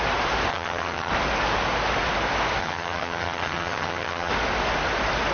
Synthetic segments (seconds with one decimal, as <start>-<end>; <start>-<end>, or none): 0.5-1.1; 2.6-4.3